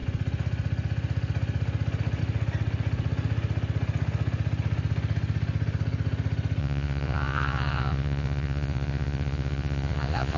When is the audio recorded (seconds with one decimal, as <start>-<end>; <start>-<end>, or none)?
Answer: 0.0-6.6